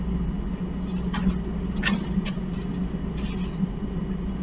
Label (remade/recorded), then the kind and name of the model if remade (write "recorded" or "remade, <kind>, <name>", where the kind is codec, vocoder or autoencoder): recorded